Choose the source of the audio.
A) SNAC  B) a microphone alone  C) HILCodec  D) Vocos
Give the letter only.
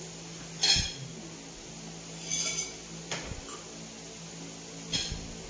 B